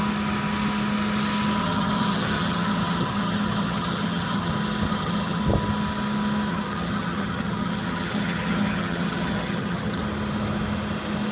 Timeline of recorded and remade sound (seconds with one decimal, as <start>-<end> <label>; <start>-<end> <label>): 0.0-1.6 recorded; 1.6-4.5 remade; 4.5-4.9 recorded; 4.9-5.4 remade; 5.4-6.5 recorded; 6.5-10.0 remade; 10.0-11.3 recorded